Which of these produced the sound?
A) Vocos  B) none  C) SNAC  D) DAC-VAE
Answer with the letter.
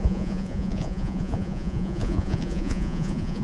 A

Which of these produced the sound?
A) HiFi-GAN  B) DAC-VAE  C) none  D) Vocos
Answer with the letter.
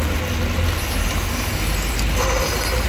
C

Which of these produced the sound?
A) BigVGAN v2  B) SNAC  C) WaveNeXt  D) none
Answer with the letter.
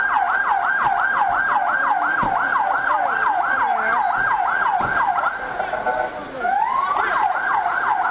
D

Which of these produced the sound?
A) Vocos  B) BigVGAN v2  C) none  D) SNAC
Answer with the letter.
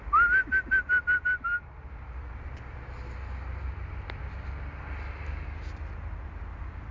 C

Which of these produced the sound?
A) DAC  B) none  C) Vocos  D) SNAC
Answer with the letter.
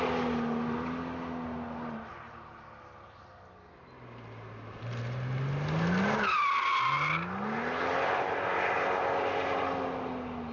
B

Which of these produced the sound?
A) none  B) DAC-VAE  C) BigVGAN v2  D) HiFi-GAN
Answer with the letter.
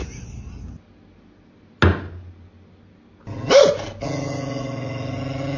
A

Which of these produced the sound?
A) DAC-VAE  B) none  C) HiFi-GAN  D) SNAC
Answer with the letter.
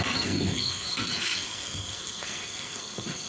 D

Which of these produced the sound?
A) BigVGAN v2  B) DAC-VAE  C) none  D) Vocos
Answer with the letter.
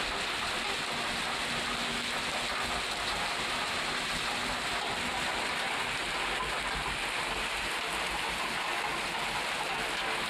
C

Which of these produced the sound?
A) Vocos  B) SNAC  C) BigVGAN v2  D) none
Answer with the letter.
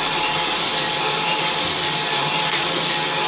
C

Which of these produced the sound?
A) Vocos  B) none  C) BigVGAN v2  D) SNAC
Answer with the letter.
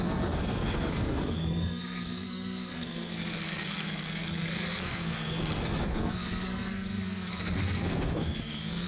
D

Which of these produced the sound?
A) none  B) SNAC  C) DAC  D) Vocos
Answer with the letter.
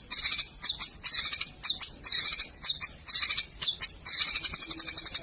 A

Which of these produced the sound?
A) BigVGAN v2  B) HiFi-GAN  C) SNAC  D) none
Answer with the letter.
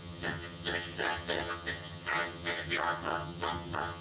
B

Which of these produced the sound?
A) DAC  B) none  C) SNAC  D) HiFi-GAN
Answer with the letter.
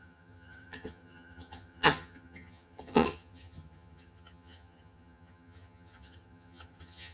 D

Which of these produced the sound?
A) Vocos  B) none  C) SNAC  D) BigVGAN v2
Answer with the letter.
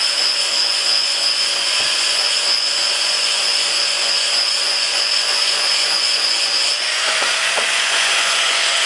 A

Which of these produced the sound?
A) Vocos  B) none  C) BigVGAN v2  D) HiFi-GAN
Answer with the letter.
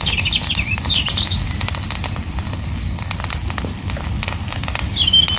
B